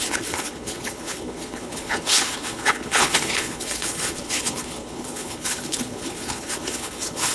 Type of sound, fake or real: fake